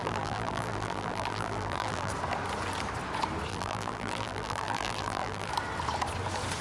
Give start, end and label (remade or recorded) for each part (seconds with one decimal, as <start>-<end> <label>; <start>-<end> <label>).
0.0-2.1 remade; 2.1-3.5 recorded; 3.5-5.5 remade; 5.5-6.6 recorded